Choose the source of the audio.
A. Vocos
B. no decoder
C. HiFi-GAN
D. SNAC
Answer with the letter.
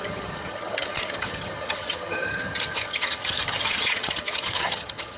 C